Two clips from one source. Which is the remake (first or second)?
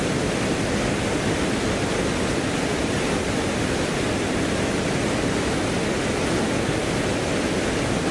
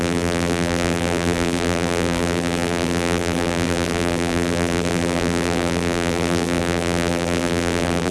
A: second